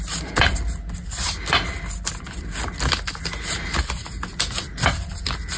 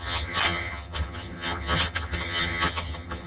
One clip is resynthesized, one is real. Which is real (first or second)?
first